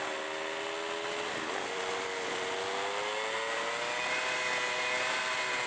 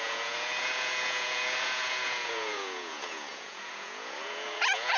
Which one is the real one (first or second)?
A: first